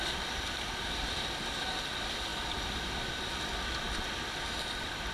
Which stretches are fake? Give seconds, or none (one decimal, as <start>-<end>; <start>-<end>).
none